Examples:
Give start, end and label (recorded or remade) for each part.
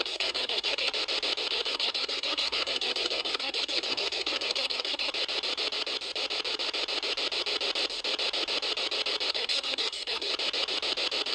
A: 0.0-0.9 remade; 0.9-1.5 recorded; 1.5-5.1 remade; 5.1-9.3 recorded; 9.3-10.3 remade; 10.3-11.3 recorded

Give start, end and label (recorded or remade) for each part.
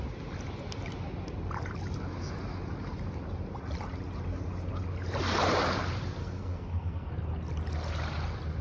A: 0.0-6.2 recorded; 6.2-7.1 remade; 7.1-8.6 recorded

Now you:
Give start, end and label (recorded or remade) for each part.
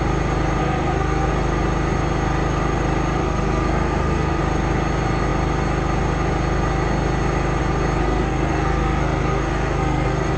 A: 0.0-0.6 recorded; 0.6-1.3 remade; 1.3-3.2 recorded; 3.2-4.4 remade; 4.4-8.0 recorded; 8.0-10.4 remade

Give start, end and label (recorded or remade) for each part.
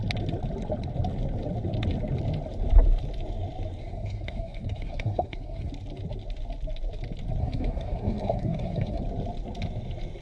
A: 0.0-3.8 recorded; 3.8-5.7 remade; 5.7-7.4 recorded; 7.4-9.0 remade; 9.0-10.2 recorded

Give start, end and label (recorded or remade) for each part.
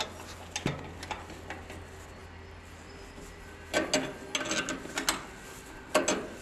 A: 0.0-6.4 recorded